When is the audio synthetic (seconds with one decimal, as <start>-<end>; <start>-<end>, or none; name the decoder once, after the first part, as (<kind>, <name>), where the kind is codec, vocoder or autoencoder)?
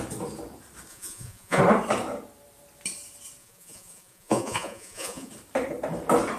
0.9-1.6 (vocoder, Vocos); 3.4-5.3